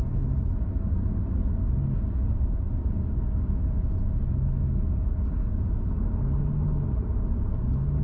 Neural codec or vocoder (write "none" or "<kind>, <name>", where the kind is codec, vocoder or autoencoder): none